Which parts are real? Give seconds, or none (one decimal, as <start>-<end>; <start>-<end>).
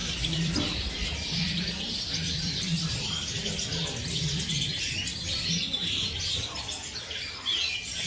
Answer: 3.1-8.1